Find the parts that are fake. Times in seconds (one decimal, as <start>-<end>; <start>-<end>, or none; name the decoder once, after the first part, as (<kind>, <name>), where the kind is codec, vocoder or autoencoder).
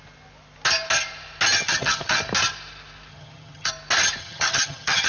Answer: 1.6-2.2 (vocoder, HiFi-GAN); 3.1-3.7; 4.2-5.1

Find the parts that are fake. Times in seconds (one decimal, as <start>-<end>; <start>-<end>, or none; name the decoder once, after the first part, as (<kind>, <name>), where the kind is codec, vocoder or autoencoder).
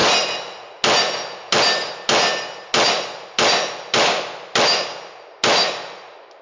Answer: none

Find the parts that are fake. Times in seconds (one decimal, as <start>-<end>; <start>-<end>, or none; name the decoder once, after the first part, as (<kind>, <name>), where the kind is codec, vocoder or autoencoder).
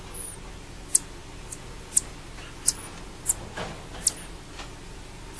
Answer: none